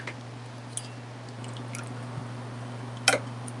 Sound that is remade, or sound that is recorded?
recorded